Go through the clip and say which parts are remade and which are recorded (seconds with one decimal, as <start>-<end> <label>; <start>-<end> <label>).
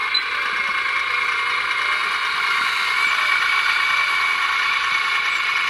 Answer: 0.0-5.7 recorded